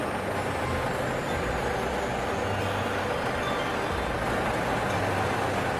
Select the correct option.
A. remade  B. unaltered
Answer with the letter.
B